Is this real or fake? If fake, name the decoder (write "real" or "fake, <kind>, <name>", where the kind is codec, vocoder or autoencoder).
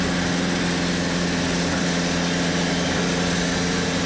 real